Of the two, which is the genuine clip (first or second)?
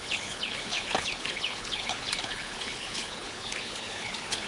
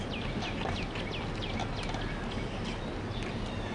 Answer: second